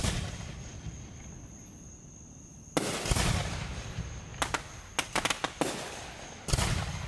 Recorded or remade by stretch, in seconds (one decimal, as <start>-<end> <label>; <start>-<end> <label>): 0.0-7.1 recorded